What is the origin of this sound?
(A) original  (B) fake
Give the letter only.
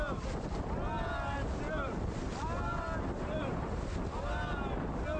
A